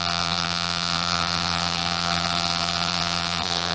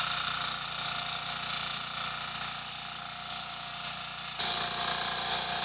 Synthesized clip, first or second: first